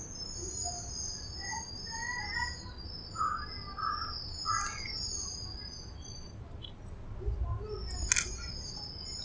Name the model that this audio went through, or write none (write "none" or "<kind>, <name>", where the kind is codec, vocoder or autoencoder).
none